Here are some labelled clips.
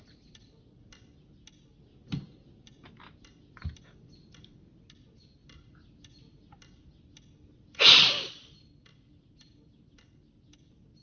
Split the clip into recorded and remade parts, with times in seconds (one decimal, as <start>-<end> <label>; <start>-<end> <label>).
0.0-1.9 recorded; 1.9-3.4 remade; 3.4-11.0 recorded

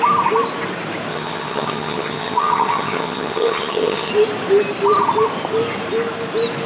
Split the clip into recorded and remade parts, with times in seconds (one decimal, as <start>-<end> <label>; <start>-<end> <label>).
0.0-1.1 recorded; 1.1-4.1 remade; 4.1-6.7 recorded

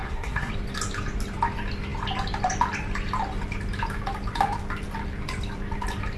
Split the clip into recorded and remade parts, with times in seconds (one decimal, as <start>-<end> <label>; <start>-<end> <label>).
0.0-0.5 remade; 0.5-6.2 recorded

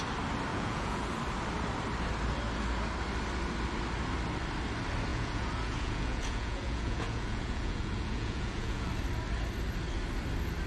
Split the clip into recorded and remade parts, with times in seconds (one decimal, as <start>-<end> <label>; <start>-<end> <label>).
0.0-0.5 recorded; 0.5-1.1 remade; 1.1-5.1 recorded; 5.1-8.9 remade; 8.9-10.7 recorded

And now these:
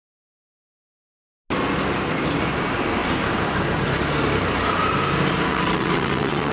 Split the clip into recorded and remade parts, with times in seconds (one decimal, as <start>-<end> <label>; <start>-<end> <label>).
0.0-5.5 recorded; 5.5-6.5 remade